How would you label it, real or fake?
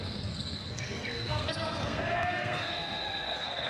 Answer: fake